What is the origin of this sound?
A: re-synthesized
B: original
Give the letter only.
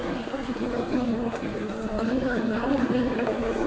A